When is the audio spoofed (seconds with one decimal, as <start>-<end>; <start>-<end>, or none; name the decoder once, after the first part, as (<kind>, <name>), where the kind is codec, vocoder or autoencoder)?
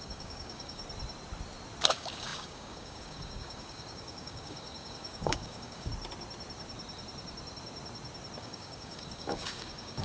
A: 0.0-0.8 (codec, DAC); 1.9-5.9; 8.4-10.0